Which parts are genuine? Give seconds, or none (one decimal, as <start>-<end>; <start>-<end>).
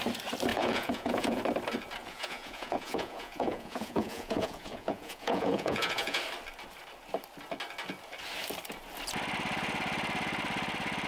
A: 0.0-0.5; 1.4-2.0; 6.2-11.1